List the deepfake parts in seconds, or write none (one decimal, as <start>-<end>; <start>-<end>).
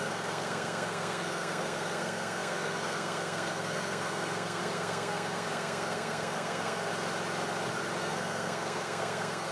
0.0-6.9; 8.0-9.5